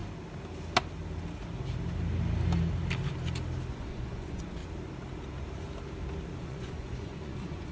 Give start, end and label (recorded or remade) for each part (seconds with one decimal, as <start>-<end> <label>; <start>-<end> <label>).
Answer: 0.0-3.7 recorded; 3.7-4.6 remade; 4.6-6.4 recorded; 6.4-7.7 remade